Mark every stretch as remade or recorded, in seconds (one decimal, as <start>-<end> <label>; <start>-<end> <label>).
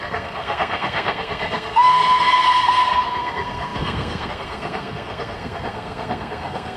0.0-6.8 remade